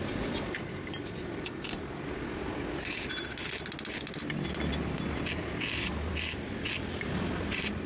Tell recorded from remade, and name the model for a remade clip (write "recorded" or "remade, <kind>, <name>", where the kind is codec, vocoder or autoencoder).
recorded